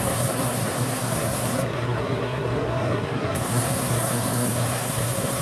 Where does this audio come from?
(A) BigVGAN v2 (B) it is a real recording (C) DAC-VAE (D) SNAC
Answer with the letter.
D